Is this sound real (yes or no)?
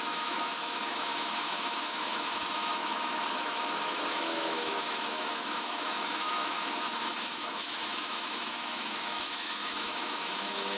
no